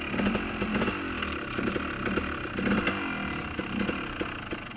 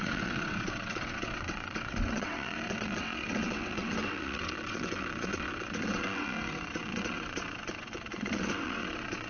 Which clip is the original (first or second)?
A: first